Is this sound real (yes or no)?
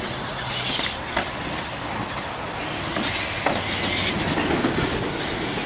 yes